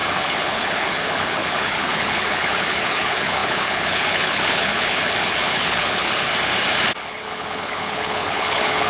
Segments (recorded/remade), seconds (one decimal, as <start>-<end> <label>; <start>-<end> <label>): 0.0-6.3 remade; 6.3-7.0 recorded; 7.0-8.9 remade